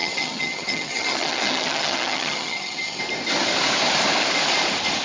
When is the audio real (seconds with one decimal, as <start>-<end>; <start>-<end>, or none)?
3.0-5.0